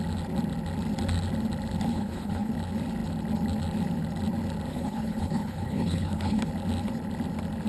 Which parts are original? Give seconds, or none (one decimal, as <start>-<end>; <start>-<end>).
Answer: 0.0-1.9; 2.5-4.7; 6.5-7.7